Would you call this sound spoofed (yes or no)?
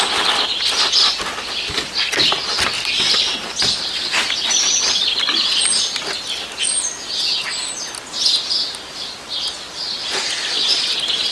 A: no